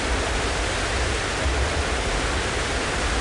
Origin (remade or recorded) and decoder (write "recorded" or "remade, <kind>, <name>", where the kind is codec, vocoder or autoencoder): recorded